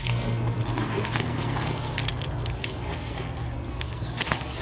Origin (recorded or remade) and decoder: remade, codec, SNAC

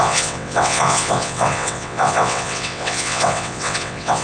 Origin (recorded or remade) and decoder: remade, vocoder, WaveNeXt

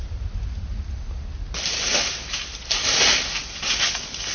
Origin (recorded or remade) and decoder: recorded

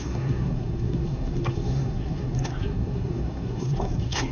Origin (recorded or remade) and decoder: remade, codec, SNAC